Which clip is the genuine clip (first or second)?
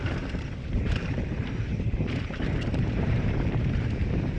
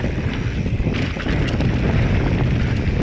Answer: second